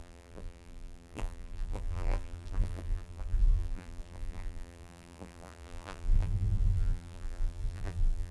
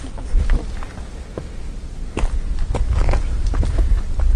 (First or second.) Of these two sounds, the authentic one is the second